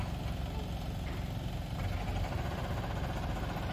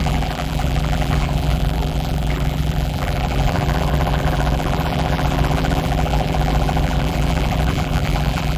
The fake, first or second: second